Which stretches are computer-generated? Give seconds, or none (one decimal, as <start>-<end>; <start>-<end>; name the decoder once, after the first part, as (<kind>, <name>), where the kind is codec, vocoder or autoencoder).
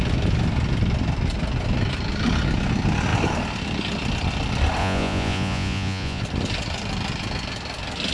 4.8-6.2 (vocoder, Vocos)